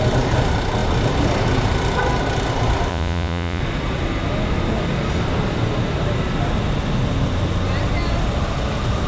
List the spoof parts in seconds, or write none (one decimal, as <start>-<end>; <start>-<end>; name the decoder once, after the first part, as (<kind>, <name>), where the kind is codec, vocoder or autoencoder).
2.9-3.6 (vocoder, Vocos)